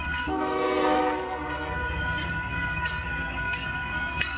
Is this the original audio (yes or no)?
no